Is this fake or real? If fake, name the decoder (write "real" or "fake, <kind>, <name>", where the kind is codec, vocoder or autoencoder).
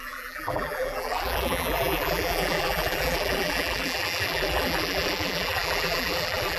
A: fake, vocoder, BigVGAN v2